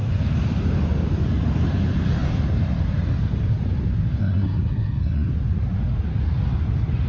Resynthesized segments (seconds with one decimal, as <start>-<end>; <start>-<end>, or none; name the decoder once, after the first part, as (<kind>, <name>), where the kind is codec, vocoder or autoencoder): 4.2-5.3 (codec, SNAC)